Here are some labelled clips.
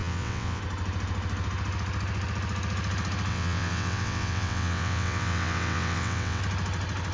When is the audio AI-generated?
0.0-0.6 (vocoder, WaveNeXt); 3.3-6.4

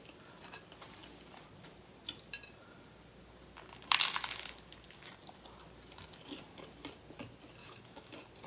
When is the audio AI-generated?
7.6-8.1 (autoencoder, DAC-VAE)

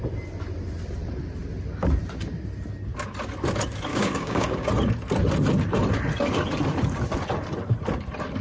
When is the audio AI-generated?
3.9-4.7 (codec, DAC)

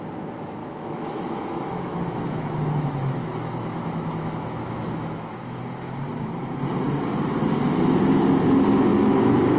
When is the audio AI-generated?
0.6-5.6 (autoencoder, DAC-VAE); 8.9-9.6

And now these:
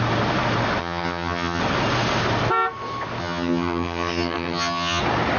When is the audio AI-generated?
0.8-1.6 (vocoder, HiFi-GAN); 3.2-5.0

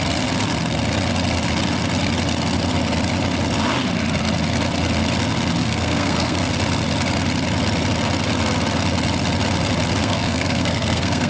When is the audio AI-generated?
5.6-6.4 (codec, SNAC); 10.0-11.3